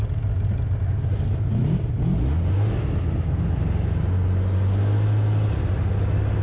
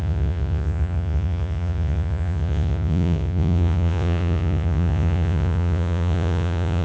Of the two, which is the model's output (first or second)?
second